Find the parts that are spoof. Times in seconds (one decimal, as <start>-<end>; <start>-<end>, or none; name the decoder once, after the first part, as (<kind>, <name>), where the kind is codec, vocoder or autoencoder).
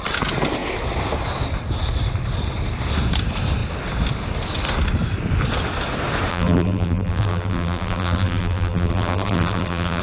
6.3-10.0 (vocoder, BigVGAN v2)